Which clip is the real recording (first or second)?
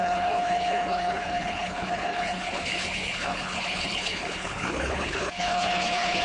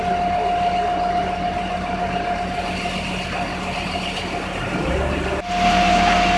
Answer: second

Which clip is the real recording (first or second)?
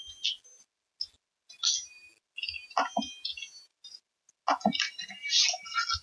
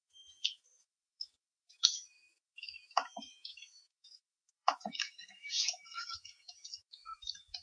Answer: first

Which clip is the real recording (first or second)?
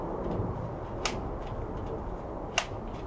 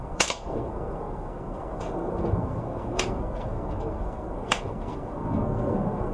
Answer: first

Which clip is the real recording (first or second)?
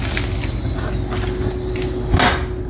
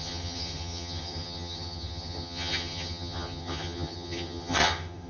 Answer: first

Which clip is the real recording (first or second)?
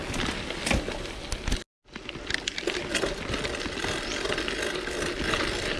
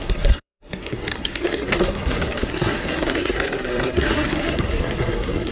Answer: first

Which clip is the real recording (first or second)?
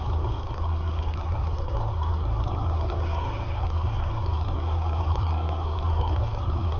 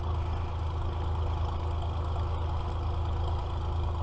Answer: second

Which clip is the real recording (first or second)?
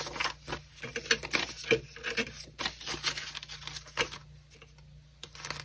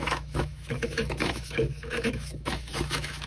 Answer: first